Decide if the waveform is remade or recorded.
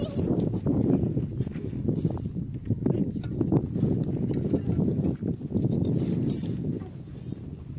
recorded